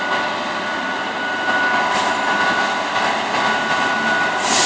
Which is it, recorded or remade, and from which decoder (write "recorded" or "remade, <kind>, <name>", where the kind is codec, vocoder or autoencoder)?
recorded